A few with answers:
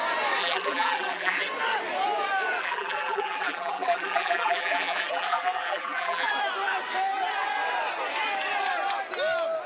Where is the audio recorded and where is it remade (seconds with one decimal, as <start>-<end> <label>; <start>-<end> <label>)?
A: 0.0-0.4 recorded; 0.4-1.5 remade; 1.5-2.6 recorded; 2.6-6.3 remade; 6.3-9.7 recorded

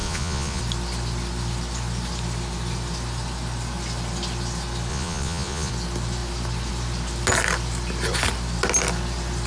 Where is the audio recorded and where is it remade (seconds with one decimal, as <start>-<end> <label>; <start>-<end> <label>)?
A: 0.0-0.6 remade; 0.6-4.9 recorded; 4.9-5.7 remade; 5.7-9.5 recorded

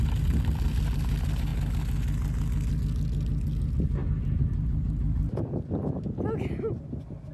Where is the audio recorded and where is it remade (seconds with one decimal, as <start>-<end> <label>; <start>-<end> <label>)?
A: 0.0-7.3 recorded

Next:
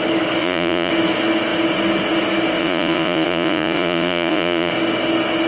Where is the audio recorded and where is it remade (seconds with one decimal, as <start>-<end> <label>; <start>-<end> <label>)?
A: 0.0-0.4 recorded; 0.4-0.9 remade; 0.9-2.6 recorded; 2.6-4.7 remade; 4.7-5.5 recorded

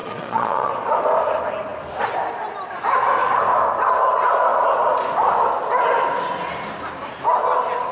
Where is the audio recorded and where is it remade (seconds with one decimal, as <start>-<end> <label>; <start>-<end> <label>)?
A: 0.0-0.7 remade; 0.7-7.9 recorded

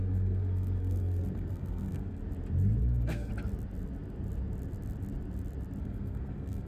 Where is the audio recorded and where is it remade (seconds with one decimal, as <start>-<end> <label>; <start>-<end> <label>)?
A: 0.0-2.2 remade; 2.2-2.8 recorded; 2.8-3.3 remade; 3.3-5.8 recorded; 5.8-6.7 remade

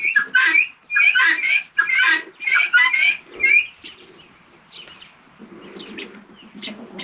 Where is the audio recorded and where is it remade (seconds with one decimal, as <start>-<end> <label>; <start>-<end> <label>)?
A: 0.0-7.0 recorded